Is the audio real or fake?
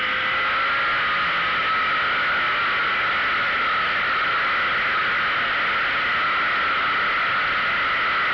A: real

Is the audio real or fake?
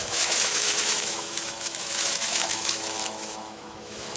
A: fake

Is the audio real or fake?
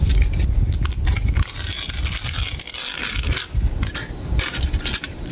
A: real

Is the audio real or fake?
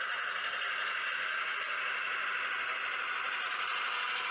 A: real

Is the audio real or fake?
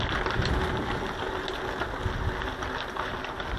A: real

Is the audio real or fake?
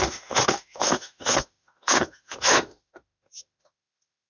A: fake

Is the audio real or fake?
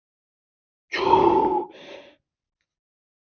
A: real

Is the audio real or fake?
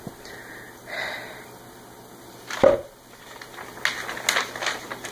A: real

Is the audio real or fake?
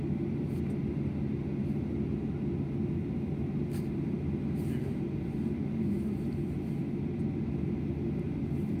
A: real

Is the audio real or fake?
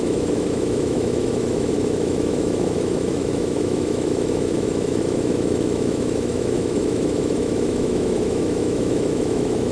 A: fake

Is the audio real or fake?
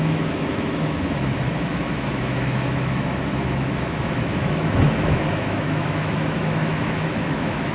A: fake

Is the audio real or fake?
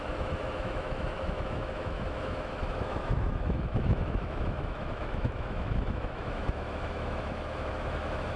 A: fake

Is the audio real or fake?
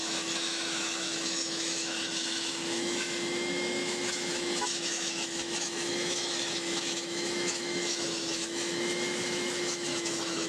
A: fake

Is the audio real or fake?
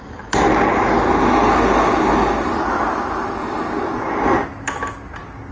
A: real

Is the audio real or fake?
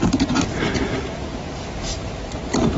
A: real